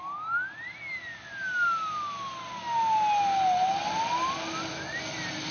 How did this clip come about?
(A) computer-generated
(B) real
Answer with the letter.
B